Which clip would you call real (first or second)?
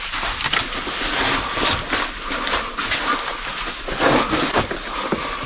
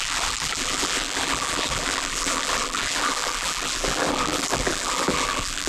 first